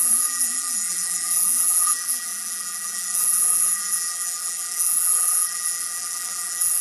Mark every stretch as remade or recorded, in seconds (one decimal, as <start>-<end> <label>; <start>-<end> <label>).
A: 0.0-6.8 remade